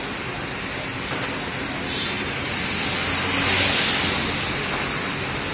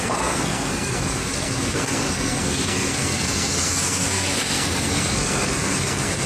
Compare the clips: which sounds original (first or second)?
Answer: first